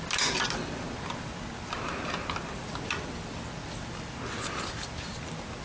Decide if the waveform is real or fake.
real